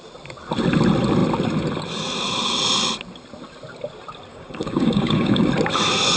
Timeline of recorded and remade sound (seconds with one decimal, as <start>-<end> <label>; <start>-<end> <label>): 0.0-4.3 recorded; 4.3-5.5 remade; 5.5-6.2 recorded